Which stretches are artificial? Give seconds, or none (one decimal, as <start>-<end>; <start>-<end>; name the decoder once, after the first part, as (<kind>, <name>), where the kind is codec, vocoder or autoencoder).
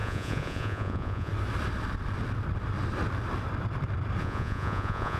0.0-1.3 (vocoder, Vocos); 4.2-5.2